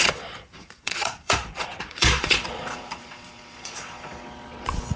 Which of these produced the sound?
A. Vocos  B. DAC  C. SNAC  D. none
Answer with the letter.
A